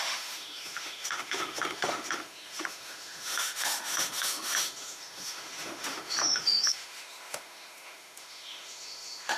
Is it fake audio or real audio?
fake